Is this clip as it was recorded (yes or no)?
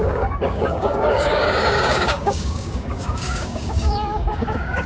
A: no